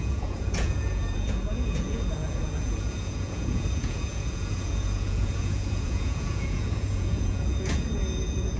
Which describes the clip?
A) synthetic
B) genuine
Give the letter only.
A